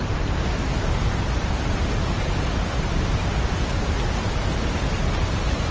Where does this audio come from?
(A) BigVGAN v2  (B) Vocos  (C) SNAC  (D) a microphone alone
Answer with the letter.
D